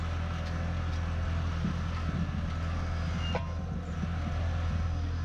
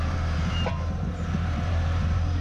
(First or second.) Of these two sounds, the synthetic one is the second